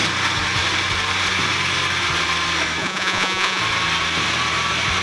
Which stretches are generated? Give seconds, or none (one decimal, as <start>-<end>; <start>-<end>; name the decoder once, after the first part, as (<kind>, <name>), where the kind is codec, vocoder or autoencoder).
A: 2.8-3.6 (vocoder, Vocos)